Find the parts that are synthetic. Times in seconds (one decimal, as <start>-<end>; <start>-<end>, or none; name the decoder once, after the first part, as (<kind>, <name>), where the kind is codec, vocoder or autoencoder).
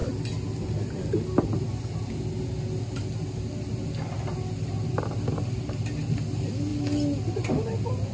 none